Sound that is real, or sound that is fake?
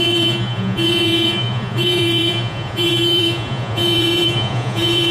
fake